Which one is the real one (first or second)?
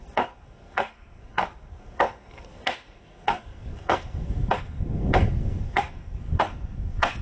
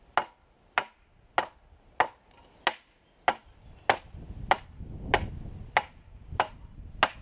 second